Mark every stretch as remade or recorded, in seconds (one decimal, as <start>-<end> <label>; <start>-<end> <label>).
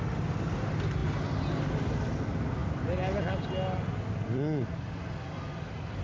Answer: 0.0-6.0 recorded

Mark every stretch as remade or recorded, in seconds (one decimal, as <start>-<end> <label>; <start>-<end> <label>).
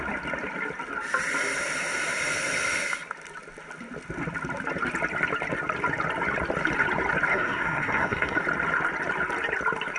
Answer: 0.0-7.3 recorded; 7.3-8.4 remade; 8.4-10.0 recorded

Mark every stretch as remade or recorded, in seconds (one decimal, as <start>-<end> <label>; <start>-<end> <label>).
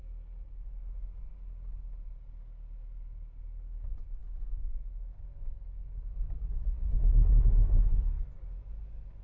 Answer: 0.0-9.2 recorded